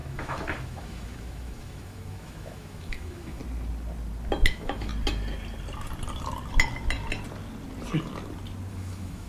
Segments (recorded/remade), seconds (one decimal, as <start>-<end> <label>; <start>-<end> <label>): 0.0-3.4 remade; 3.4-4.5 recorded; 4.5-4.9 remade; 4.9-8.7 recorded; 8.7-9.3 remade